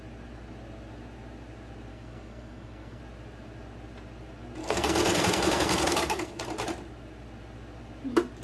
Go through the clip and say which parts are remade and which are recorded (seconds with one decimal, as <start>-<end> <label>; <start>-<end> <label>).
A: 0.0-1.9 recorded; 1.9-3.0 remade; 3.0-4.6 recorded; 4.6-6.4 remade; 6.4-8.4 recorded